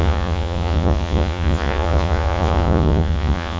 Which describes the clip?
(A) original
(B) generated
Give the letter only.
B